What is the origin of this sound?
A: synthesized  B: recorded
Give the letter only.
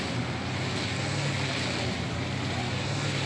B